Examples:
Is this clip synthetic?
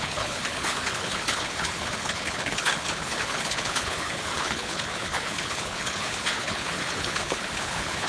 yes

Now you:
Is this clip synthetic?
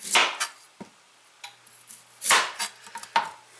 no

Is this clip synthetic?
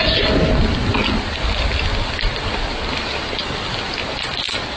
no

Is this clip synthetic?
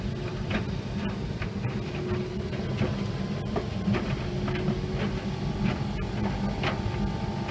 no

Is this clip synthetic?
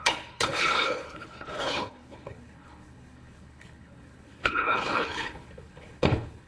yes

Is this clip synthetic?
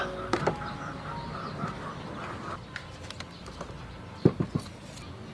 no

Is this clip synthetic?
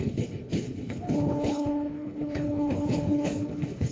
yes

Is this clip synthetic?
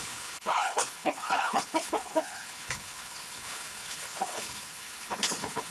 yes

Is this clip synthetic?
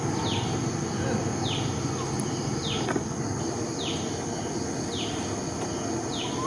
no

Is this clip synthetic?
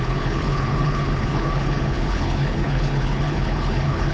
yes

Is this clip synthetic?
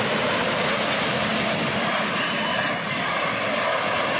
no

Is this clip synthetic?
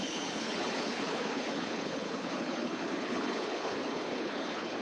yes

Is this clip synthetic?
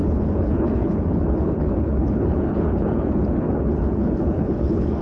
yes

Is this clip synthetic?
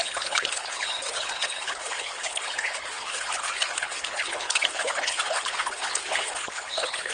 yes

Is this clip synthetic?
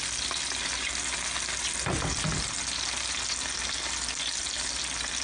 no